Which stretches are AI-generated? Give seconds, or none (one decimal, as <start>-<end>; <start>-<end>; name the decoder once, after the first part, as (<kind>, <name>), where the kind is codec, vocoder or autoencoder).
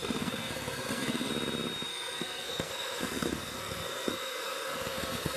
0.0-1.3 (codec, SNAC); 1.9-5.4